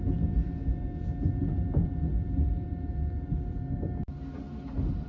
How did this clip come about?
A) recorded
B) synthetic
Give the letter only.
A